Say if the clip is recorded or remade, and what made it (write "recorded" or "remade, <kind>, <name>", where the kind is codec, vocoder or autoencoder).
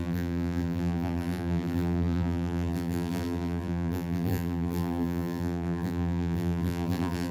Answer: remade, vocoder, BigVGAN v2